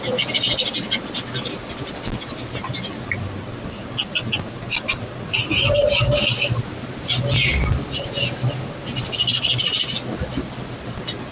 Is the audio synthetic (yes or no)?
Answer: no